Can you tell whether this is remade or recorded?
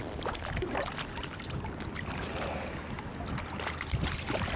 recorded